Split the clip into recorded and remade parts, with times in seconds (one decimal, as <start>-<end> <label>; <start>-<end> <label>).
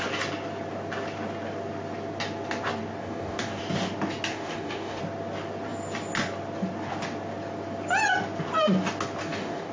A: 0.0-3.0 recorded; 3.0-3.6 remade; 3.6-4.3 recorded; 4.3-5.0 remade; 5.0-9.2 recorded; 9.2-9.7 remade